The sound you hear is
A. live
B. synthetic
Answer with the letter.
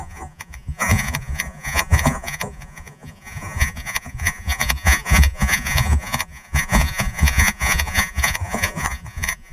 B